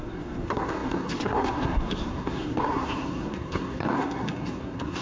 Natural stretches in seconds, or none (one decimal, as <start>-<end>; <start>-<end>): none